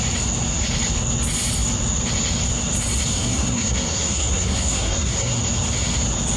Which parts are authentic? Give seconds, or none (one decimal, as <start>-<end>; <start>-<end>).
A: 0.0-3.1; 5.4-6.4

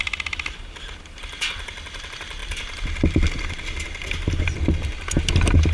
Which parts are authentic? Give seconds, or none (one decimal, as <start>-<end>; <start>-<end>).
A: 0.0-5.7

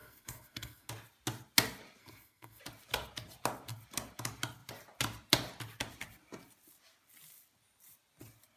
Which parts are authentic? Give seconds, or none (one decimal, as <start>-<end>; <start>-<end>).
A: 0.9-2.0; 2.6-8.6

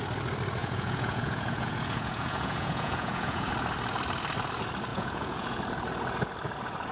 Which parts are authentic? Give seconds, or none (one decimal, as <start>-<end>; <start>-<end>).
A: 0.0-0.6; 3.5-4.9; 5.6-6.9

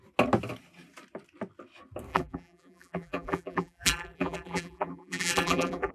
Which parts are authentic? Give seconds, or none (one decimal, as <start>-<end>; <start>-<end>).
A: 0.0-2.1